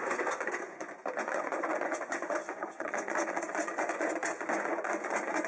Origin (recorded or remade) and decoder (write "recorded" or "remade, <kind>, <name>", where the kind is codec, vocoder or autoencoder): remade, vocoder, Vocos